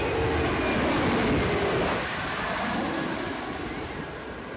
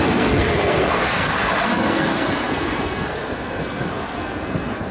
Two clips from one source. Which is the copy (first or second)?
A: second